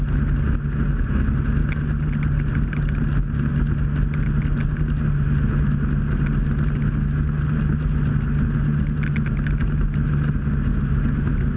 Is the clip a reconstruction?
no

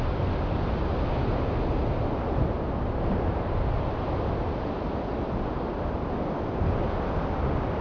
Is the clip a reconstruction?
no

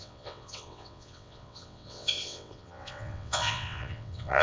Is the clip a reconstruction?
yes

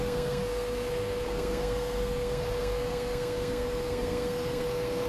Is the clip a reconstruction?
yes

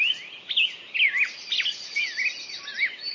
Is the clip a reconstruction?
no